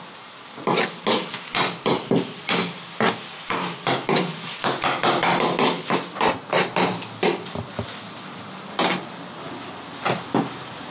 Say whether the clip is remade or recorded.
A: recorded